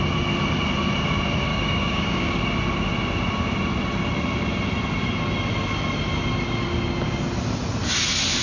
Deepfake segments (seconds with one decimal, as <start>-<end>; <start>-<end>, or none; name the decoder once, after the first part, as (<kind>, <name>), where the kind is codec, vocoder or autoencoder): 1.5-2.4 (codec, DAC)